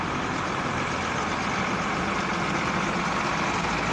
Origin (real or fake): fake